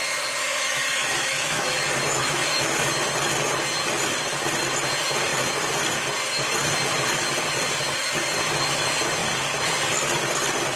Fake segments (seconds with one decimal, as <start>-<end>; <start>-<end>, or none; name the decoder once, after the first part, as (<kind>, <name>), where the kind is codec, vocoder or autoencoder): 0.4-2.9 (autoencoder, DAC-VAE)